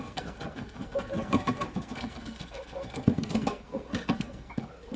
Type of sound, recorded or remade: remade